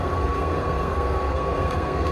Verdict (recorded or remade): remade